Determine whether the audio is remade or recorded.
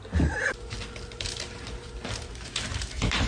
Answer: recorded